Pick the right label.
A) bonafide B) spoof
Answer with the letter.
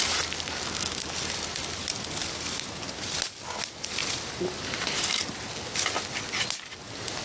A